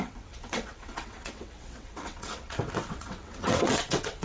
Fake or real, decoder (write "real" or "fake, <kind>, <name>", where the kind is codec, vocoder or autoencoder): fake, vocoder, WaveNeXt